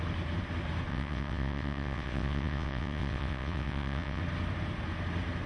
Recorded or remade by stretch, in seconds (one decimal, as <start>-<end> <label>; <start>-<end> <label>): 0.0-0.9 recorded; 0.9-4.2 remade; 4.2-5.5 recorded